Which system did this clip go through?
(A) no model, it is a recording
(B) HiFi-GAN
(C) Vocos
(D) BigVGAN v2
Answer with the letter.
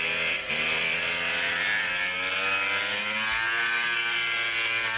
A